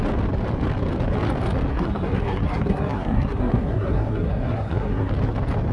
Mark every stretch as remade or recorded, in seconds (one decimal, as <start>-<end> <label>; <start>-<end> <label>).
0.0-1.7 recorded; 1.7-5.1 remade; 5.1-5.7 recorded